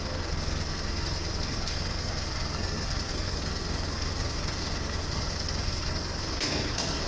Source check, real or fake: fake